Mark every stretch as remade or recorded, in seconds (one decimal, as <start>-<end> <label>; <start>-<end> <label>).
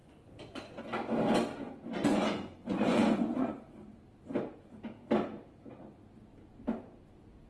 0.0-0.8 remade; 0.8-2.1 recorded; 2.1-3.5 remade; 3.5-7.5 recorded